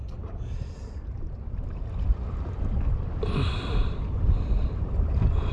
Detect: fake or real real